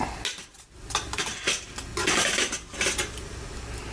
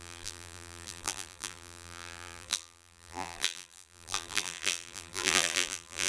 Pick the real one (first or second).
first